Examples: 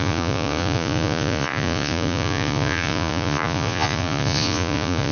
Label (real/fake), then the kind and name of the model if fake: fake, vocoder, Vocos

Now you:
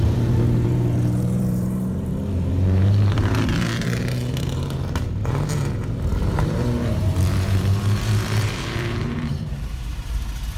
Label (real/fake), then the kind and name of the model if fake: fake, vocoder, BigVGAN v2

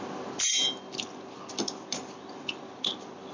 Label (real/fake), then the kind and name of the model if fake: real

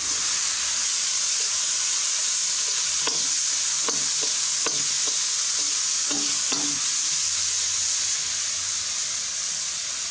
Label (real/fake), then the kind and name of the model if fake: real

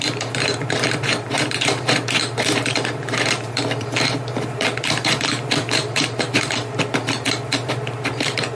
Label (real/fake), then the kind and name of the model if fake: fake, vocoder, BigVGAN v2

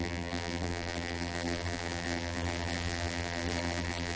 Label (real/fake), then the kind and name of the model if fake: fake, vocoder, BigVGAN v2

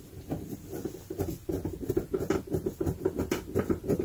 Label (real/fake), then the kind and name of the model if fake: real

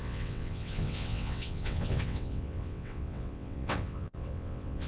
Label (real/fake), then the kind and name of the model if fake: fake, vocoder, WaveNeXt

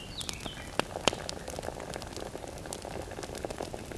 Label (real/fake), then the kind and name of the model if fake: real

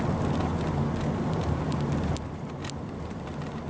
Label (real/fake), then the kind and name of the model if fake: real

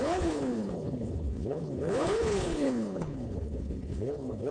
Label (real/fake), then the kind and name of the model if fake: fake, codec, HILCodec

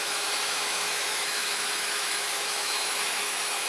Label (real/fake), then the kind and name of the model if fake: fake, autoencoder, DAC-VAE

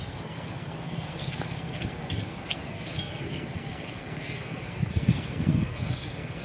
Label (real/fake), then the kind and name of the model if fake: fake, codec, SNAC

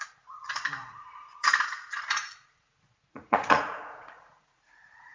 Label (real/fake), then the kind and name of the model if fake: fake, vocoder, Vocos